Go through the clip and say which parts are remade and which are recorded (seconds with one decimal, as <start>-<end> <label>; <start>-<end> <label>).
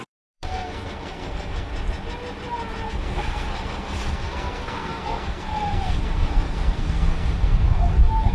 0.0-1.7 remade; 1.7-2.9 recorded; 2.9-8.3 remade